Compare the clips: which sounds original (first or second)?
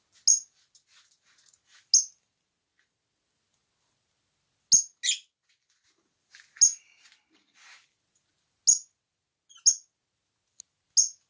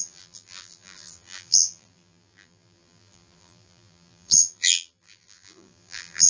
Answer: first